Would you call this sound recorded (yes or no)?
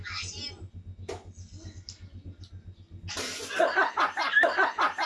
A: yes